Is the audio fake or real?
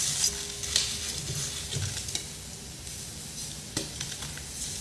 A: real